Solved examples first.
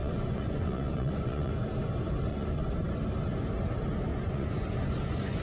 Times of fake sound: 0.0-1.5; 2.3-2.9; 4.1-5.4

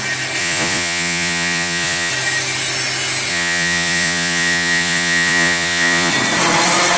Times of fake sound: 0.4-2.1; 3.3-6.1